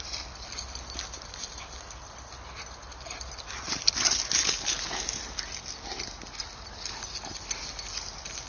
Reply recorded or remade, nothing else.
recorded